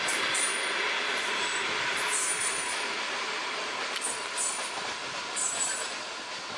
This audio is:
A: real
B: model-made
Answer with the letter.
A